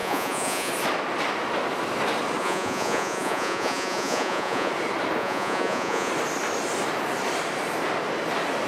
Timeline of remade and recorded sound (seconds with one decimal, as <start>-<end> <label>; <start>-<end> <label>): 0.0-0.7 remade; 0.7-2.4 recorded; 2.4-4.7 remade; 4.7-5.2 recorded; 5.2-6.1 remade; 6.1-8.7 recorded